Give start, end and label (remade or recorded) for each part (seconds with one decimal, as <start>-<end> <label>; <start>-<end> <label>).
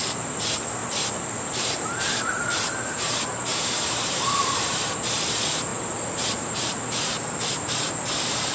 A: 0.0-0.8 remade; 0.8-1.5 recorded; 1.5-5.7 remade; 5.7-6.3 recorded; 6.3-8.5 remade